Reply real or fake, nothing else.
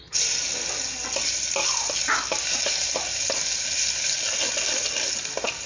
real